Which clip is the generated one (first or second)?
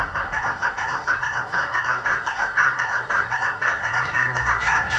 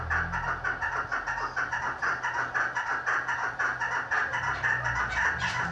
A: first